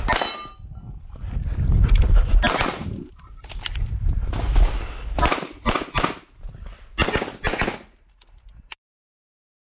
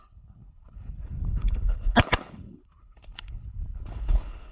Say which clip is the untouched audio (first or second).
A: first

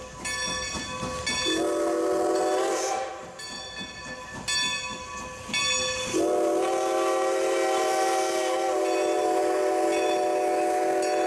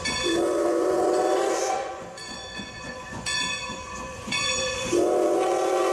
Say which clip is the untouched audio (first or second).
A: first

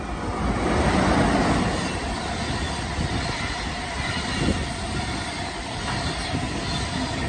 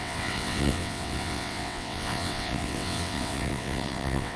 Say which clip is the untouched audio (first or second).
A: first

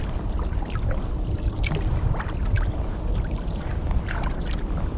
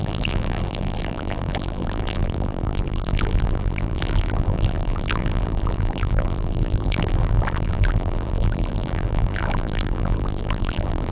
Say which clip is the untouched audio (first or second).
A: first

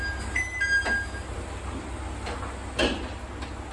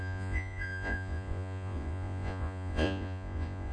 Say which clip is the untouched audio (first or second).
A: first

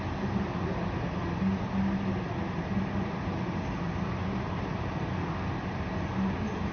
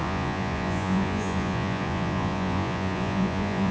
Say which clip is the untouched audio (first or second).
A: first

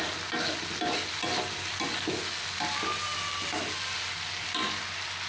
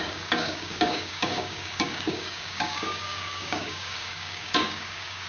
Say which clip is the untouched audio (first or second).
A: first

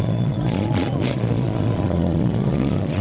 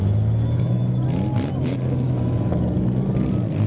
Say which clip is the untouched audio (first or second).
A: second